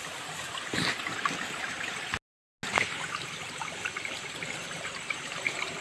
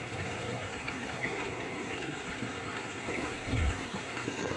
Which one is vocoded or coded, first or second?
second